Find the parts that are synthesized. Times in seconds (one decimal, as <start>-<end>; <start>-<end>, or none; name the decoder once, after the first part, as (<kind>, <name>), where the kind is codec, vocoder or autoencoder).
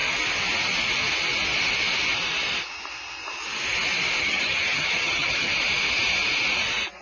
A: 4.2-5.5 (vocoder, HiFi-GAN)